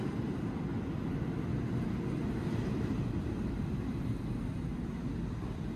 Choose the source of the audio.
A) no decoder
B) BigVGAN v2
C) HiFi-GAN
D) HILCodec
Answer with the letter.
A